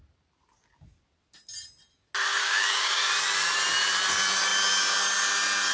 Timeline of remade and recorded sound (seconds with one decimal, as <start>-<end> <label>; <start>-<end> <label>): 0.0-2.4 recorded; 2.4-3.0 remade; 3.0-5.7 recorded